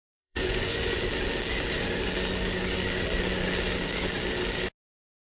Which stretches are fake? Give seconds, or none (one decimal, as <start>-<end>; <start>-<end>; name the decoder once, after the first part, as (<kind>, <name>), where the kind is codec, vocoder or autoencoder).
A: 0.0-1.0 (vocoder, Vocos)

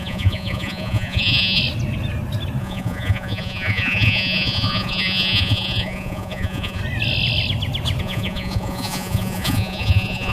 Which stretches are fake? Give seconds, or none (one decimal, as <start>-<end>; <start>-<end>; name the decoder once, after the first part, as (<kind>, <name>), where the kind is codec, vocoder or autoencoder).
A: 0.0-1.6 (vocoder, Vocos); 2.6-6.8; 8.0-10.3

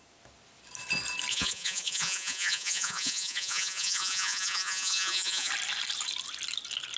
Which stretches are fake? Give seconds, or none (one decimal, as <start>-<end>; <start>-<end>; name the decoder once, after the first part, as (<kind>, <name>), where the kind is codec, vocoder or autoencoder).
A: 1.3-5.5 (vocoder, Vocos)

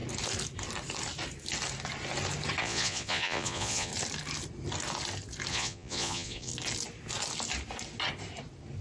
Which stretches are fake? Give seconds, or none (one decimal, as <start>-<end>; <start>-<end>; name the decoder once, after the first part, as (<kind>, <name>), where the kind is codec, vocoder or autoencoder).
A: 2.6-3.9 (vocoder, Vocos); 5.5-6.5

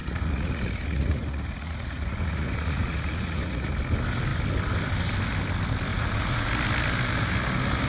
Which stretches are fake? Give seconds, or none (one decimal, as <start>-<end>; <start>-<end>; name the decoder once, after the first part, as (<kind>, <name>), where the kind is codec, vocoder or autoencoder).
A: 0.0-3.7 (vocoder, Vocos); 5.9-6.5

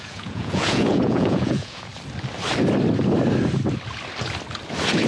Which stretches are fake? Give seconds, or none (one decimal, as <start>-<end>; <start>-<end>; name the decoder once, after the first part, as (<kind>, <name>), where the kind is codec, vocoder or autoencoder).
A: 0.0-1.9 (vocoder, Vocos)